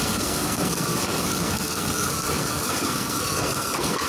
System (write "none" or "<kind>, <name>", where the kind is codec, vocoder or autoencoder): codec, SNAC